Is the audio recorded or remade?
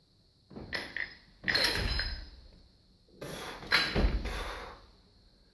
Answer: recorded